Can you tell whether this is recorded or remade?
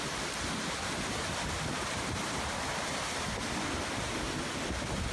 recorded